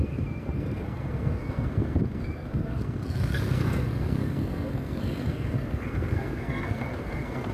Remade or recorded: remade